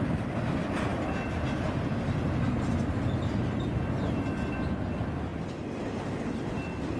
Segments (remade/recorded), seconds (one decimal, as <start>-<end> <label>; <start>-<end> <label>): 0.0-7.0 recorded